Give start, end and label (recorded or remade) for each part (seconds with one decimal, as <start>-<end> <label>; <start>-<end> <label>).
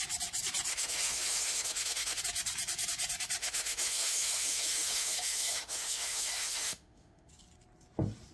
0.0-0.7 recorded; 0.7-2.2 remade; 2.2-3.4 recorded; 3.4-7.3 remade; 7.3-8.3 recorded